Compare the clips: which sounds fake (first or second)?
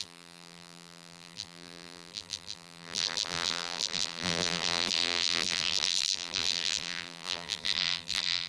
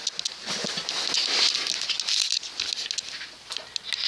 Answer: first